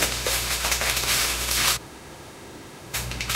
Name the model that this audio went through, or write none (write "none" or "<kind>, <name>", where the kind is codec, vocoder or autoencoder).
autoencoder, DAC-VAE